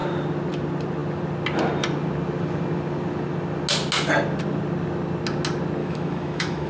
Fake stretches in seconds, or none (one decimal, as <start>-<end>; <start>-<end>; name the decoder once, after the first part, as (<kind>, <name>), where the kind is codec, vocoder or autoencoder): 5.8-6.7 (autoencoder, DAC-VAE)